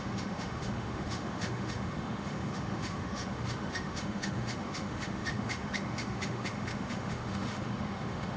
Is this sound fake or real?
fake